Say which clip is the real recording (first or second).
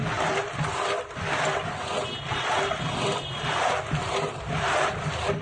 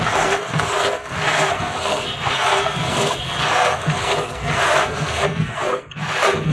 first